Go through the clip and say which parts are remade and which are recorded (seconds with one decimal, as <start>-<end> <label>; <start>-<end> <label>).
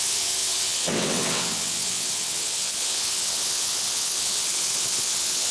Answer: 0.0-5.5 remade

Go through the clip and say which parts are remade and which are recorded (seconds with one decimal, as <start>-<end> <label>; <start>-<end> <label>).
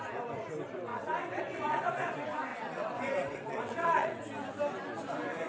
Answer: 0.0-0.9 recorded; 0.9-1.8 remade; 1.8-2.5 recorded; 2.5-4.2 remade; 4.2-5.5 recorded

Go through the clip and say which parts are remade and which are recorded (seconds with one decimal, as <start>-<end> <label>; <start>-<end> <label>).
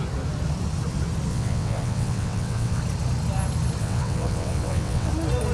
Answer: 0.0-1.3 recorded; 1.3-2.8 remade; 2.8-3.8 recorded; 3.8-5.1 remade; 5.1-5.5 recorded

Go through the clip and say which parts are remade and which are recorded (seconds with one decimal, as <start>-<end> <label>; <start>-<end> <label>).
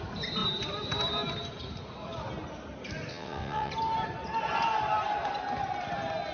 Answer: 0.0-3.1 recorded; 3.1-3.7 remade; 3.7-6.3 recorded